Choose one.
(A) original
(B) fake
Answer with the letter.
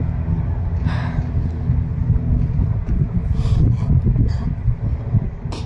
A